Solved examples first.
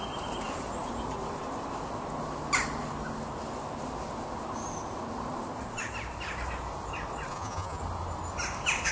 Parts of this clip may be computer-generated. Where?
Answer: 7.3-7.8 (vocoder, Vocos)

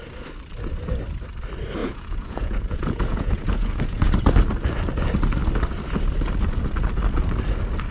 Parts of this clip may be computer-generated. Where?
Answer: 1.8-4.1 (vocoder, Vocos)